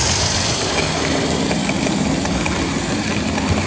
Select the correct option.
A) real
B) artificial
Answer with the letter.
A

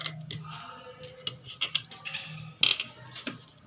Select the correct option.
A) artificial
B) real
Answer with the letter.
B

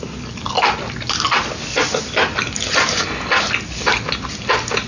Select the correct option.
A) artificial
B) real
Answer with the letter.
B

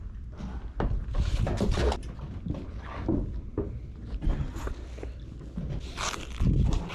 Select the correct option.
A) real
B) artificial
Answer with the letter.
A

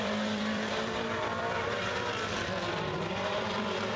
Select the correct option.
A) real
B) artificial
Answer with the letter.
B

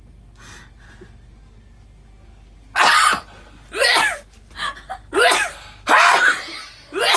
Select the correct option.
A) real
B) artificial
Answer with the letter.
A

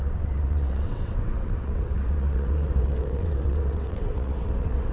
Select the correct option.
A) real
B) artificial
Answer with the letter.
B